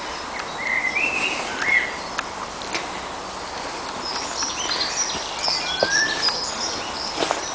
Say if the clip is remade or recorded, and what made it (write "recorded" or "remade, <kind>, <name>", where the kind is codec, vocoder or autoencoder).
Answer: recorded